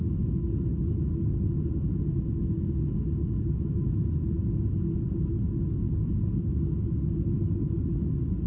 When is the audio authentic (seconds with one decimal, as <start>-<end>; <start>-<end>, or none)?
0.0-8.5